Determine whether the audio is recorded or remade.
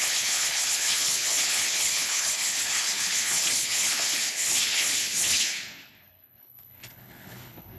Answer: remade